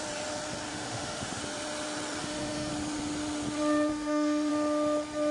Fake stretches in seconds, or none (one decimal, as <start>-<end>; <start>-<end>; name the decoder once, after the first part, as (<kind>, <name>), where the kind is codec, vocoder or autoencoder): 0.7-1.4 (autoencoder, DAC-VAE); 2.2-2.7; 3.9-4.5